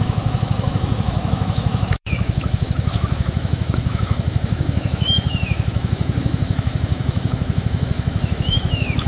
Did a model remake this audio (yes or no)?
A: yes